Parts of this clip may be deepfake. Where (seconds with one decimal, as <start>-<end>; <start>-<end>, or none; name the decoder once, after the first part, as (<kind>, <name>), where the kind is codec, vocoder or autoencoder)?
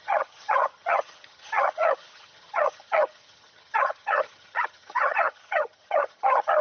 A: 0.0-6.6 (vocoder, HiFi-GAN)